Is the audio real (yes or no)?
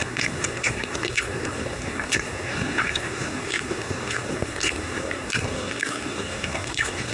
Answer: no